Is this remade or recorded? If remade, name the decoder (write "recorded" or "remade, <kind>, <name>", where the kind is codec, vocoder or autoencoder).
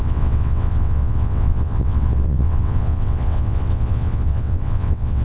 remade, vocoder, WaveNeXt